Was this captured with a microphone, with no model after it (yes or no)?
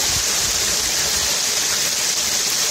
yes